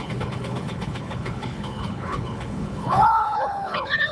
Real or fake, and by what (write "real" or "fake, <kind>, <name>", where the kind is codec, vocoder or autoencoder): fake, codec, HILCodec